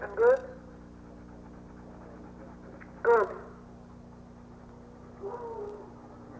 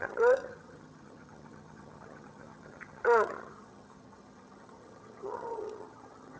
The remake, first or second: second